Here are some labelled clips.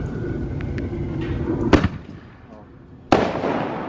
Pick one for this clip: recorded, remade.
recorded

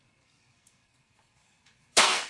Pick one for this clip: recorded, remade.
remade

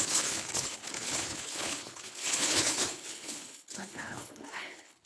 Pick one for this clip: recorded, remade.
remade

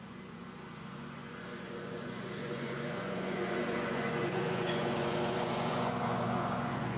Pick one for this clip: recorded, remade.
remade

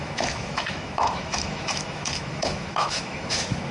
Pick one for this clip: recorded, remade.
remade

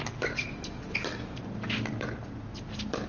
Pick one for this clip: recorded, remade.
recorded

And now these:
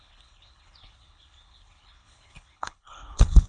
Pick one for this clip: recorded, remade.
remade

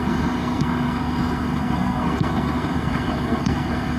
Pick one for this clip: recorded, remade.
remade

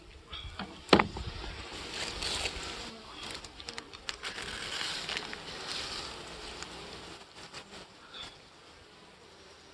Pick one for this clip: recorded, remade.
recorded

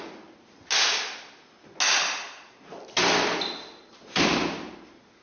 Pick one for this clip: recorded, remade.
recorded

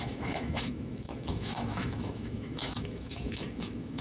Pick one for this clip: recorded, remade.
remade